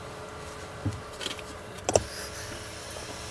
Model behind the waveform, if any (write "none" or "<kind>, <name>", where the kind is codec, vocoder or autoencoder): vocoder, BigVGAN v2